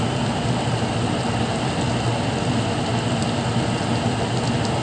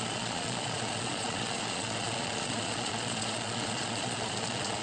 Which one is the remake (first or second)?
second